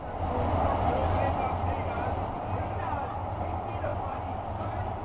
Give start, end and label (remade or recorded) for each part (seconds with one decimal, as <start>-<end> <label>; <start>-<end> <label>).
0.0-5.0 recorded